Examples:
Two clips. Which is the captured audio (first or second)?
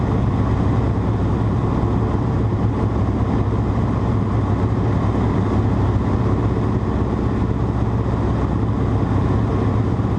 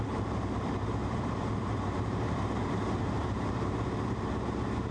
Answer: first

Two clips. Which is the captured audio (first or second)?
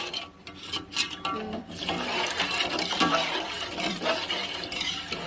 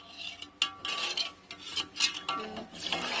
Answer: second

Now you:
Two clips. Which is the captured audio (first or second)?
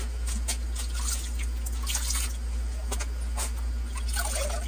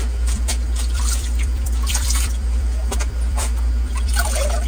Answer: first